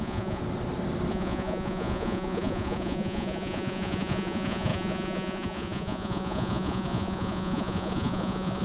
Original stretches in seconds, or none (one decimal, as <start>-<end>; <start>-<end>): 0.4-1.1

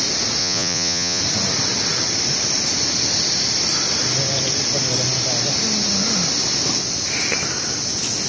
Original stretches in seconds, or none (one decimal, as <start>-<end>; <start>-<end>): 0.0-0.4; 1.2-8.3

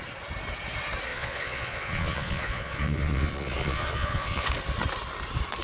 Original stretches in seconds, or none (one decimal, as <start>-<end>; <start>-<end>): 0.0-1.1; 4.5-5.6

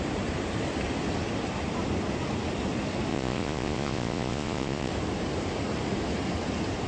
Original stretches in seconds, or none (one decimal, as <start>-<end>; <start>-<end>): 0.0-3.1; 4.9-6.9

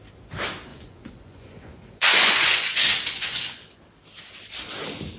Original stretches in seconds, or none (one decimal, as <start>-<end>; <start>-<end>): 0.0-0.7; 3.8-5.2